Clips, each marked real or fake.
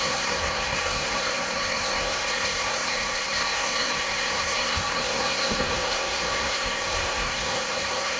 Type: fake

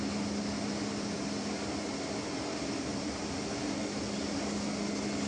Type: real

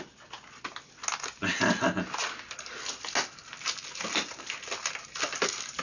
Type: real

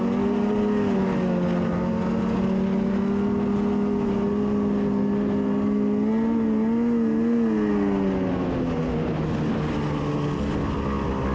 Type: real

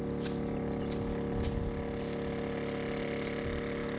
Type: real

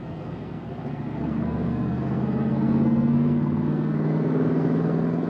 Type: fake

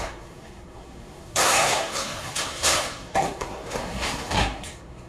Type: fake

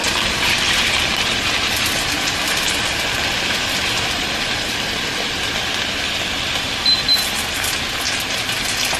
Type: real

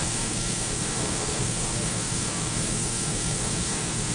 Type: fake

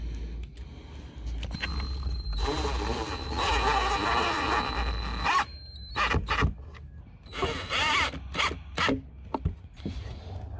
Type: real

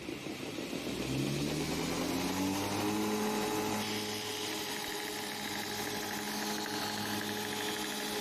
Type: real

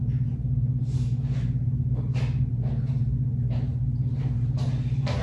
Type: real